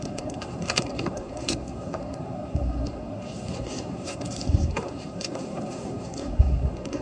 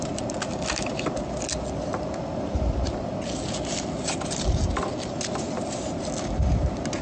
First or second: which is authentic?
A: second